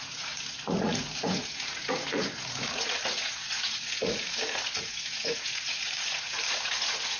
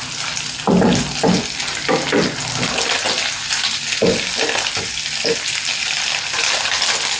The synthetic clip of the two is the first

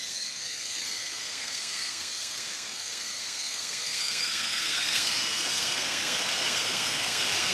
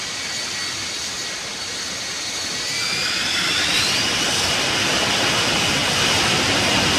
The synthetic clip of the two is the first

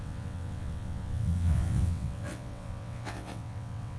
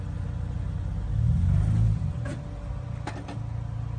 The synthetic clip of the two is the first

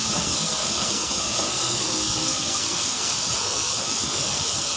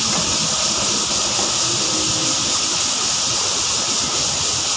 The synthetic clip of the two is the first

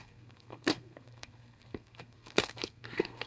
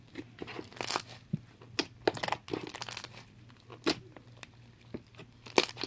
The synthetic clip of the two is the first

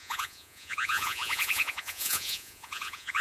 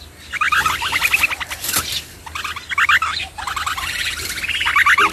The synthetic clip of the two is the first